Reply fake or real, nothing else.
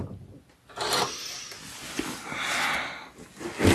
real